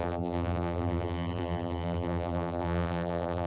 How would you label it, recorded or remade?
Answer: remade